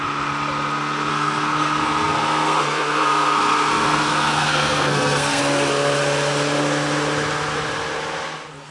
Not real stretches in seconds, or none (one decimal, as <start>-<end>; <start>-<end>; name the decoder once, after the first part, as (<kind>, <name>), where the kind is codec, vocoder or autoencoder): 1.1-5.4 (codec, SNAC)